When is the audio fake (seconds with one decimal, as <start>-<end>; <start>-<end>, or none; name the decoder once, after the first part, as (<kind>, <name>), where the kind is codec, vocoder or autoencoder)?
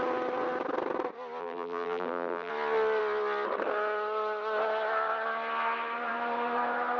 1.4-2.5 (vocoder, BigVGAN v2)